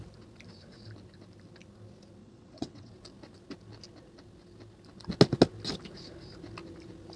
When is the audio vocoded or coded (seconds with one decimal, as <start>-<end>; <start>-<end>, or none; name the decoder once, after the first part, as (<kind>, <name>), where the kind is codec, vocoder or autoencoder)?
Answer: 2.2-2.9 (vocoder, WaveNeXt)